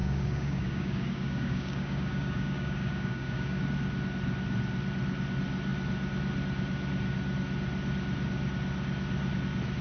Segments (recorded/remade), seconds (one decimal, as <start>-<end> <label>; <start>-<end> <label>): 0.0-3.6 remade; 3.6-9.8 recorded